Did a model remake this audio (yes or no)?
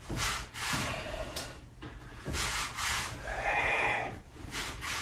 yes